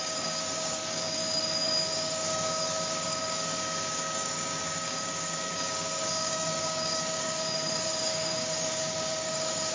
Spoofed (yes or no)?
yes